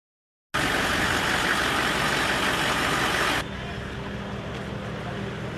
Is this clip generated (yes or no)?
no